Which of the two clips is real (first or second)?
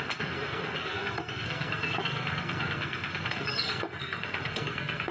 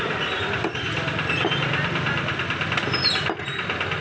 second